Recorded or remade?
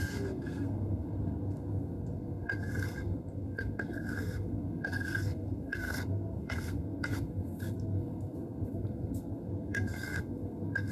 remade